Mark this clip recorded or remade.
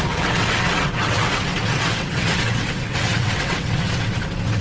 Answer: remade